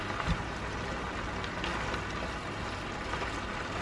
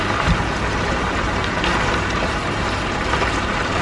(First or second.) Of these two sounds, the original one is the first